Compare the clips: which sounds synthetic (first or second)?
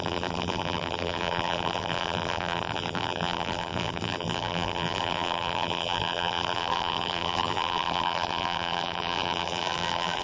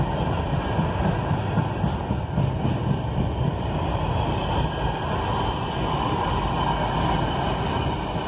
first